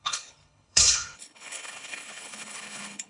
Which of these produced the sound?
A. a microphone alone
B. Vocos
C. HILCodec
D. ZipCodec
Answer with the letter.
C